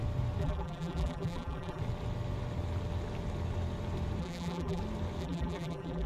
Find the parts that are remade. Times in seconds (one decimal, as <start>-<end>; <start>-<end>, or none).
0.4-1.8; 4.2-4.8; 5.2-6.1